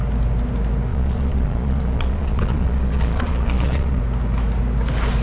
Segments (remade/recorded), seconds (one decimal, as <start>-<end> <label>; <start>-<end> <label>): 0.0-0.9 recorded; 0.9-4.0 remade; 4.0-5.2 recorded